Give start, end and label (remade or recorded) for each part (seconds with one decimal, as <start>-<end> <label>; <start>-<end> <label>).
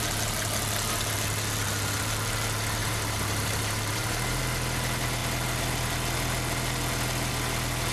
0.0-2.8 recorded; 2.8-4.4 remade; 4.4-7.9 recorded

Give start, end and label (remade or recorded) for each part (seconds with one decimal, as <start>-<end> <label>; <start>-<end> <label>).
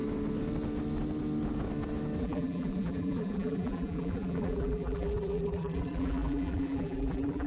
0.0-2.2 recorded; 2.2-7.5 remade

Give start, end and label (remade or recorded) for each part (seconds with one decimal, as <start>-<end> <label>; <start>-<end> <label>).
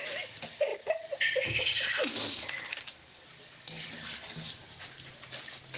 0.0-5.8 recorded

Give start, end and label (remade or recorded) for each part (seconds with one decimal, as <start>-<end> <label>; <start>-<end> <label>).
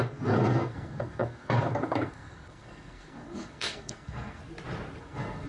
0.0-4.4 remade; 4.4-5.0 recorded; 5.0-5.5 remade